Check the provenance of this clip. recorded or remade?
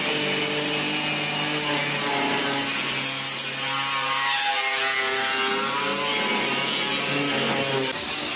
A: recorded